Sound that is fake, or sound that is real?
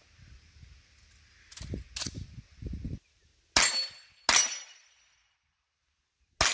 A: real